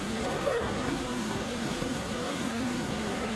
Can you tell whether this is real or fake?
fake